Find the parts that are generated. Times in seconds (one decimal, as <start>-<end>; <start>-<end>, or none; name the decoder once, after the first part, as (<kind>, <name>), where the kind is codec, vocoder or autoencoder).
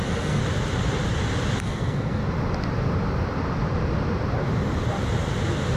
0.0-0.4 (codec, SNAC); 1.6-2.2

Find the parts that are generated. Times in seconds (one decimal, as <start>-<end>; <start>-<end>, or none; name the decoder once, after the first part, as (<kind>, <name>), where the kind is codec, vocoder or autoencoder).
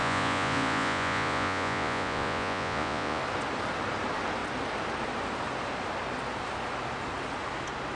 0.0-3.2 (vocoder, Vocos)